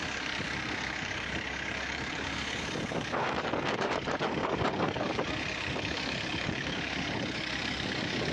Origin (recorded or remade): remade